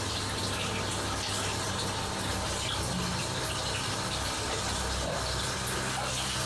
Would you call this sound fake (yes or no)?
no